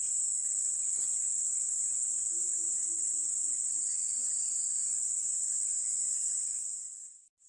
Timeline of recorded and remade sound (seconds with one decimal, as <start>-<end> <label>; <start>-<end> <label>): 0.0-7.5 recorded